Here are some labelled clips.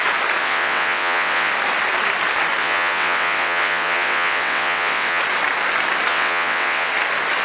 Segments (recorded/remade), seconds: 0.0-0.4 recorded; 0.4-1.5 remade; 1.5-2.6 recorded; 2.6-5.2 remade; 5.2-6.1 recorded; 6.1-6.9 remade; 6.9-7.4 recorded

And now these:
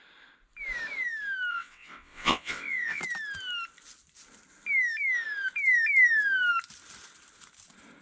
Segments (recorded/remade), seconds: 0.0-1.5 recorded; 1.5-3.0 remade; 3.0-8.0 recorded